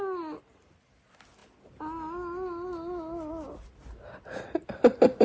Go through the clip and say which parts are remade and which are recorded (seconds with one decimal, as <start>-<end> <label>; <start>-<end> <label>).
0.0-5.2 recorded